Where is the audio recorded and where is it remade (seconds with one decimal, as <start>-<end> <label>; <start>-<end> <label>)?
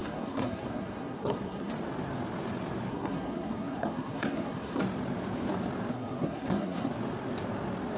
0.0-1.7 remade; 1.7-2.9 recorded; 2.9-4.8 remade; 4.8-5.9 recorded; 5.9-6.9 remade; 6.9-8.0 recorded